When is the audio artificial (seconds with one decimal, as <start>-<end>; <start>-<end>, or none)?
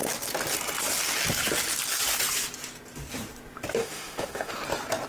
3.8-4.5